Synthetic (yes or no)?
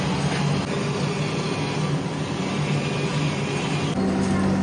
no